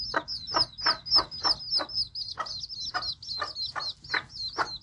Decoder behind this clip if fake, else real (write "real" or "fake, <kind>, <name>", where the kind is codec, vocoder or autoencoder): real